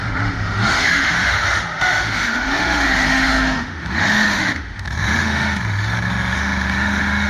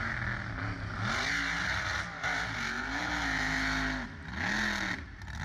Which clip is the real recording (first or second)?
second